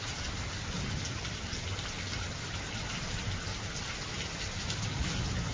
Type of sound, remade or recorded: recorded